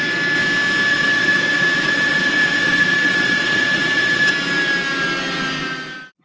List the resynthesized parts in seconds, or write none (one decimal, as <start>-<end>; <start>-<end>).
0.9-4.3